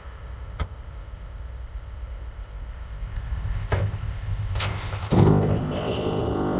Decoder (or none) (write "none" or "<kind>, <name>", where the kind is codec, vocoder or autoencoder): codec, ZipCodec